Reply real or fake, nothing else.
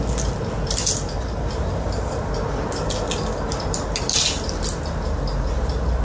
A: real